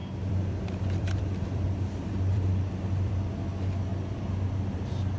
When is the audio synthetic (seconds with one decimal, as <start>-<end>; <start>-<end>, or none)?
0.0-3.1